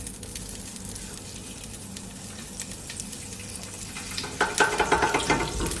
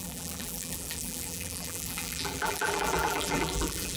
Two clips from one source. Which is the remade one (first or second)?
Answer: second